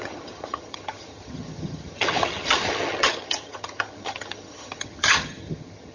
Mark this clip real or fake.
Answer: fake